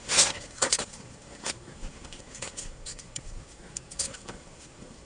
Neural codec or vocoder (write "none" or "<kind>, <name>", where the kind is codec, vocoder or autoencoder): codec, SNAC